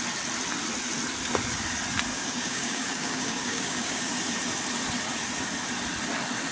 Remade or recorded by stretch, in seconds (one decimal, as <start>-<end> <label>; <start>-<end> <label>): 0.0-2.1 recorded; 2.1-4.1 remade; 4.1-6.5 recorded

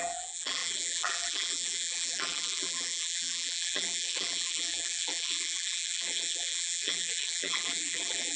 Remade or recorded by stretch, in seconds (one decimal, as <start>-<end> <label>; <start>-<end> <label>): 0.0-8.4 remade

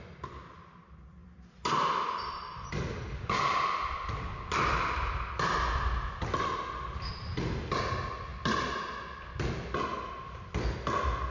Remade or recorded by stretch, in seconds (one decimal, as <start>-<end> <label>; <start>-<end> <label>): 0.0-11.3 recorded

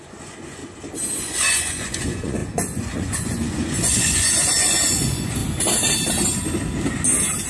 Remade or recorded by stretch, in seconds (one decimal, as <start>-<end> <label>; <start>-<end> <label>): 0.0-0.6 remade; 0.6-1.2 recorded; 1.2-5.4 remade; 5.4-7.5 recorded

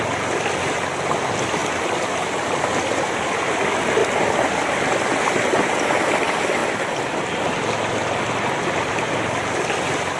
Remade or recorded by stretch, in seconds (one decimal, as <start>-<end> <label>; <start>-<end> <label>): 0.0-10.2 recorded

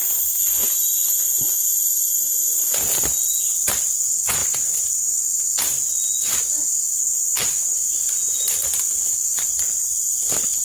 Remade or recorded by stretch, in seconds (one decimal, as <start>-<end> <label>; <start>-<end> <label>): 0.0-10.6 recorded